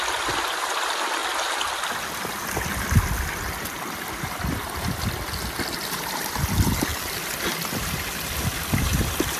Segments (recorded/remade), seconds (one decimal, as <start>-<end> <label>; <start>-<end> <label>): 0.0-9.4 recorded